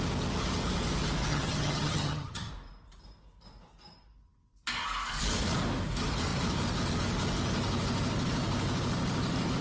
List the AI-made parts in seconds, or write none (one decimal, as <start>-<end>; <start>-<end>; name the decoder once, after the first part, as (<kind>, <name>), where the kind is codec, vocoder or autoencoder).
1.3-2.5 (vocoder, HiFi-GAN)